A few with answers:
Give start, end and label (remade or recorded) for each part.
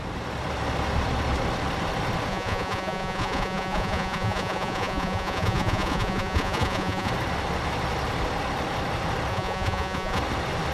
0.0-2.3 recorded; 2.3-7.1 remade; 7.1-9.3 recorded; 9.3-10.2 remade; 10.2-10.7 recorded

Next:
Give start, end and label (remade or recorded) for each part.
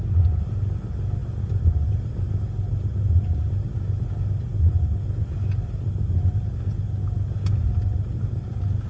0.0-8.9 recorded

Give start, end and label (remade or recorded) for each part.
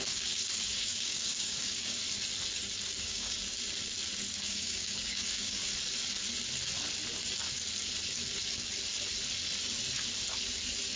0.0-2.0 remade; 2.0-3.0 recorded; 3.0-3.4 remade; 3.4-4.3 recorded; 4.3-5.7 remade; 5.7-11.0 recorded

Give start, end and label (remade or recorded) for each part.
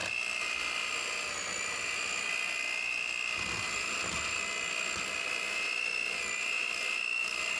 0.0-7.6 recorded